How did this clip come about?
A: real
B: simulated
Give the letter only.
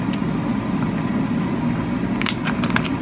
A